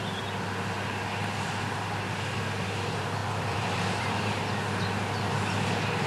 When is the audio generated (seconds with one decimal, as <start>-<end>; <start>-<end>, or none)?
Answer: 3.2-4.3